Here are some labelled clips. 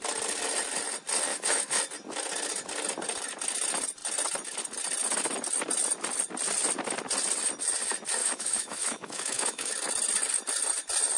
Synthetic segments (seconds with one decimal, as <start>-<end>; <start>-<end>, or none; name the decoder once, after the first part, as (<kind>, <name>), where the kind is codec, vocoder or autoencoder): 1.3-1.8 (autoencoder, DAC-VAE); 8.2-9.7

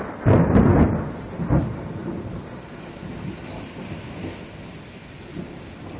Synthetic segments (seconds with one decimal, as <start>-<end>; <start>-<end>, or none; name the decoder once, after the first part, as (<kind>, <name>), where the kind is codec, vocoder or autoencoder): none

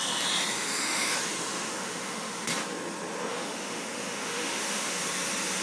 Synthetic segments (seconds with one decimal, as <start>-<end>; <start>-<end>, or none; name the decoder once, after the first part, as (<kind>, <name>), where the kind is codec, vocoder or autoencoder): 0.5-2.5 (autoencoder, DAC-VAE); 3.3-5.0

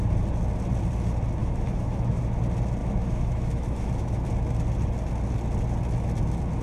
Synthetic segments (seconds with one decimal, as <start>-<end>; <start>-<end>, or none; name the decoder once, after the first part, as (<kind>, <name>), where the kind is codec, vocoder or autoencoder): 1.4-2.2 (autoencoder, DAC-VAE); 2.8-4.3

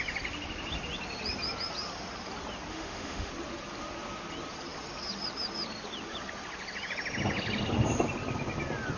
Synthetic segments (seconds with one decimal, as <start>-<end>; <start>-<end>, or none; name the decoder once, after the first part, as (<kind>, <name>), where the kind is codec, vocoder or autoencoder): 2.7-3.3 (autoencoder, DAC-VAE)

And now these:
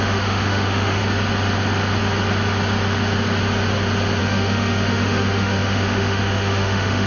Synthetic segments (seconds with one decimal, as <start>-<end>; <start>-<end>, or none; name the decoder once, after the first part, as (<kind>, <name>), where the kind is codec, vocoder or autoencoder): 0.0-1.0 (autoencoder, DAC-VAE); 4.2-7.1

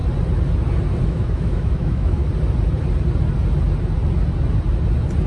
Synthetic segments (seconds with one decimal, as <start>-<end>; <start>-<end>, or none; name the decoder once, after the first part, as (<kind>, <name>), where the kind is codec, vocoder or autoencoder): 1.0-2.2 (autoencoder, DAC-VAE)